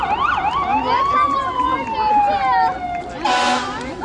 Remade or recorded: recorded